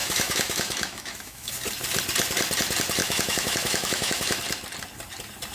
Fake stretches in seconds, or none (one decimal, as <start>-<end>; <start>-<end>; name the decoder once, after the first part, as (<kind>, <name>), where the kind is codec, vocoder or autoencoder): 0.0-1.5 (autoencoder, DAC-VAE); 3.0-4.4